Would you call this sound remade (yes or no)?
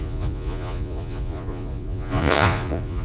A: yes